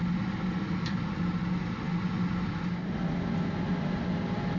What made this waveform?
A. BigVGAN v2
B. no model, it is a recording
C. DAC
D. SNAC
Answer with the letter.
B